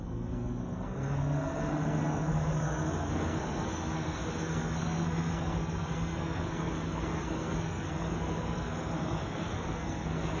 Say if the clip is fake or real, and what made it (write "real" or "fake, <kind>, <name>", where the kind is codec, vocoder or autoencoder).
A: fake, codec, SNAC